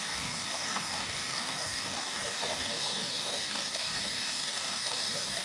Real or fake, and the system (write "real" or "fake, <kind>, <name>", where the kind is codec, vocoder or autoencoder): fake, codec, DAC